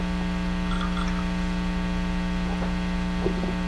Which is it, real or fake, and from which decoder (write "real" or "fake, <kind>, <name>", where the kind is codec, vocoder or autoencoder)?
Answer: real